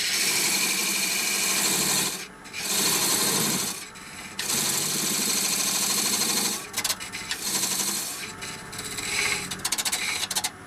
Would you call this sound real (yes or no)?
no